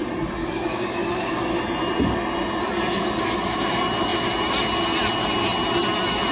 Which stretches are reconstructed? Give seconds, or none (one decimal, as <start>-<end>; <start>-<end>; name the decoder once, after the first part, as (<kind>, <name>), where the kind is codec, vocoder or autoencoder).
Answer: 0.4-1.6 (codec, DAC)